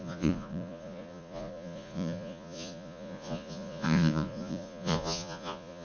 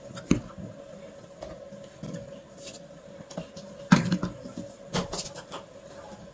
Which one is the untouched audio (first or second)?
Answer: second